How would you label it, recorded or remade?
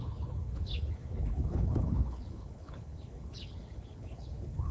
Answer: remade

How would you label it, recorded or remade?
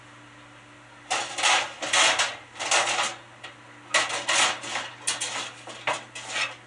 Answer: recorded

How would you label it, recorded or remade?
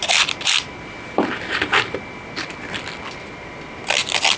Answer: recorded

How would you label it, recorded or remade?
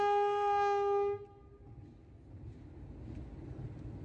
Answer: recorded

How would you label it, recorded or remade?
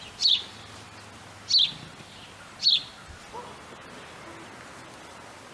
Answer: recorded